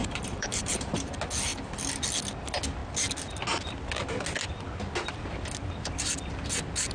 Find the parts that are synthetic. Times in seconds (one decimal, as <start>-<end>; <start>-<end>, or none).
0.0-1.1